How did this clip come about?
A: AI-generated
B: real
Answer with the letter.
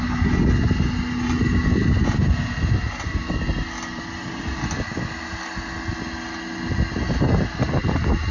B